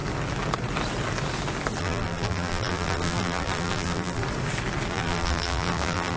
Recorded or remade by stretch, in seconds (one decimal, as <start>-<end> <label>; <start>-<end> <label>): 0.0-1.8 recorded; 1.8-4.2 remade; 4.2-4.9 recorded; 4.9-6.2 remade